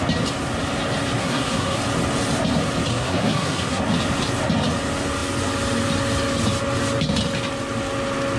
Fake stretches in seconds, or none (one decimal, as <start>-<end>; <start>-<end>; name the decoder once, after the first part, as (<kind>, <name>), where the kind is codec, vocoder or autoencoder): 1.2-1.8 (codec, SNAC); 2.9-3.8